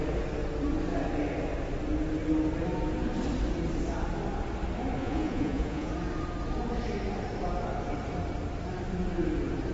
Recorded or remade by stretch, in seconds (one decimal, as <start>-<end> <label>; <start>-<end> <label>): 0.0-5.0 recorded; 5.0-5.9 remade; 5.9-9.7 recorded